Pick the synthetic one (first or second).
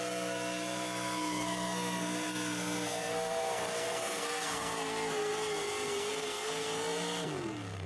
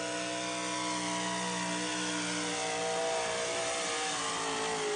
first